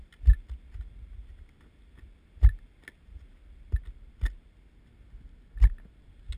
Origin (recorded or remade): recorded